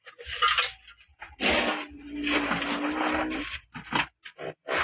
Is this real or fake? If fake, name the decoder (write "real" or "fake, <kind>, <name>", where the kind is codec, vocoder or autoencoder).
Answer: real